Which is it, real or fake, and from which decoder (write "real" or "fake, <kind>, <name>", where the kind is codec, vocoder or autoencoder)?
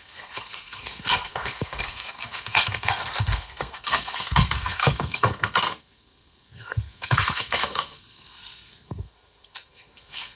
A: fake, codec, SNAC